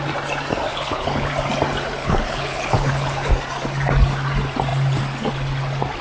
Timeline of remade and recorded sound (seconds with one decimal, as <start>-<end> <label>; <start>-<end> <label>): 0.0-0.7 recorded; 0.7-1.3 remade; 1.3-2.0 recorded; 2.0-3.3 remade; 3.3-6.0 recorded

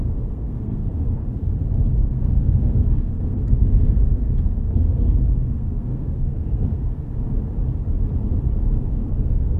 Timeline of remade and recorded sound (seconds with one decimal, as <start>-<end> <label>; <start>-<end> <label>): 0.0-1.2 remade; 1.2-1.9 recorded; 1.9-7.0 remade; 7.0-8.9 recorded; 8.9-9.6 remade

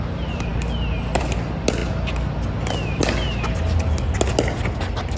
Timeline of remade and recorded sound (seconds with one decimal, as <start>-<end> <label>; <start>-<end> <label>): 0.0-5.2 recorded

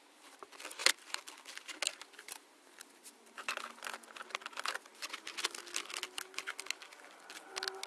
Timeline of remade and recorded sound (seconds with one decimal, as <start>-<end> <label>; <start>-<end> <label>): 0.0-7.9 recorded